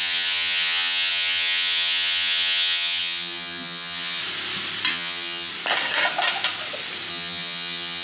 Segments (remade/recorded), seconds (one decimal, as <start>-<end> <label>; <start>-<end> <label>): 0.0-4.2 remade; 4.2-4.9 recorded; 4.9-5.5 remade; 5.5-7.1 recorded; 7.1-8.0 remade